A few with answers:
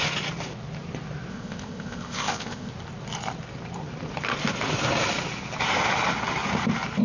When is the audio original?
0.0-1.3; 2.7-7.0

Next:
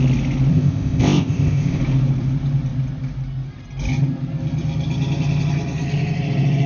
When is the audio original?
0.0-0.5; 1.8-6.7

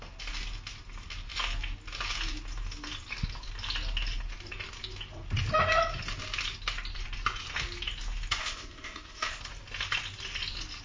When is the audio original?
0.0-8.4; 9.4-10.8

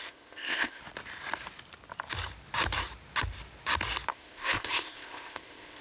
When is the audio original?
0.8-4.1

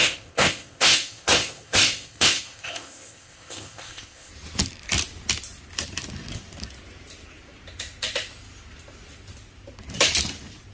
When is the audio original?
4.3-10.7

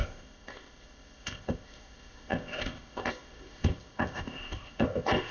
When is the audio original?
none